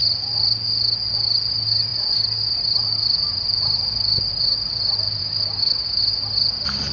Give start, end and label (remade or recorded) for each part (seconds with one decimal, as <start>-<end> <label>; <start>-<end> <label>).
0.0-5.2 recorded; 5.2-6.0 remade; 6.0-6.9 recorded

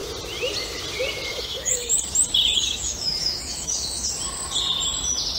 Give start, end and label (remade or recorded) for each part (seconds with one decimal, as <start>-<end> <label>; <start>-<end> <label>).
0.0-1.3 recorded; 1.3-1.9 remade; 1.9-2.5 recorded; 2.5-4.1 remade; 4.1-5.4 recorded

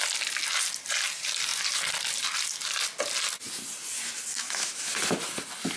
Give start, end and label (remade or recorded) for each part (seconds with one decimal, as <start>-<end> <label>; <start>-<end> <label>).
0.0-4.3 recorded; 4.3-4.9 remade; 4.9-5.8 recorded

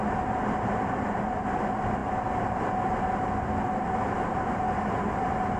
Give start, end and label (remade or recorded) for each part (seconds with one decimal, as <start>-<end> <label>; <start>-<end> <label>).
0.0-5.6 recorded

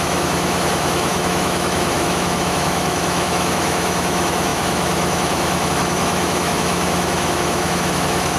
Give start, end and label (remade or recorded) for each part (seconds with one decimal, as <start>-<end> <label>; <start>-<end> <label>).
0.0-8.4 remade

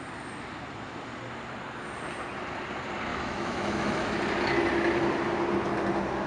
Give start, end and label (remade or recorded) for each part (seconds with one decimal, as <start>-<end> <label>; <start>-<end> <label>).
0.0-3.1 recorded; 3.1-4.2 remade; 4.2-6.3 recorded

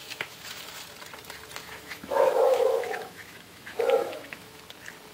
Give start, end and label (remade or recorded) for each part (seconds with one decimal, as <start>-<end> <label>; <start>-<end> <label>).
0.0-0.6 remade; 0.6-1.6 recorded; 1.6-4.6 remade; 4.6-5.1 recorded

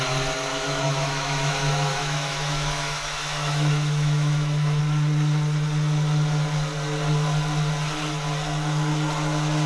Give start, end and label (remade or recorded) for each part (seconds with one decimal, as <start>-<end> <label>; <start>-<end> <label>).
0.0-0.5 recorded; 0.5-4.8 remade; 4.8-9.7 recorded